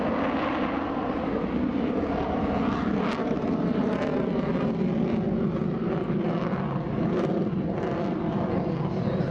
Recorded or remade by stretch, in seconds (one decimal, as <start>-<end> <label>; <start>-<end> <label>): 0.0-3.2 recorded; 3.2-3.9 remade; 3.9-9.3 recorded